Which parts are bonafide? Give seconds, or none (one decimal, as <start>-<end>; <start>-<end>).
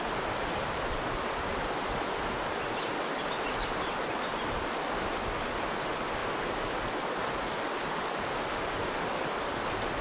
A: 0.0-10.0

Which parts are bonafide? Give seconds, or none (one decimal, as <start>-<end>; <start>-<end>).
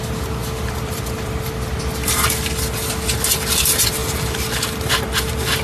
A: 0.0-0.4; 1.5-5.6